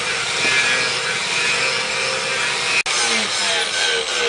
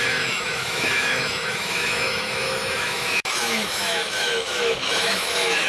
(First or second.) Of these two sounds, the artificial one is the second